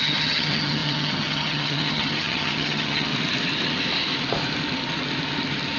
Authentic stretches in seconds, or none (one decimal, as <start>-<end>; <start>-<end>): 3.1-5.8